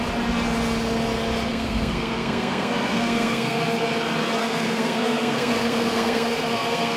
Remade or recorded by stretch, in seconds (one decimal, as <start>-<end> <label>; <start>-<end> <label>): 0.0-1.5 recorded; 1.5-3.8 remade; 3.8-4.4 recorded; 4.4-7.0 remade